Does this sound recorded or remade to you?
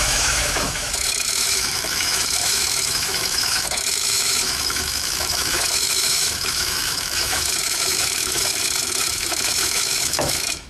remade